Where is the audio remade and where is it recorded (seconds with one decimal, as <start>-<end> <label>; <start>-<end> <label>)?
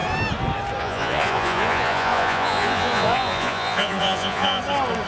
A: 0.0-0.8 recorded; 0.8-4.6 remade; 4.6-5.1 recorded